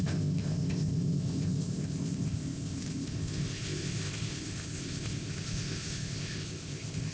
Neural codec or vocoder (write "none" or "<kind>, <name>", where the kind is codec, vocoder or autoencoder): codec, ZipCodec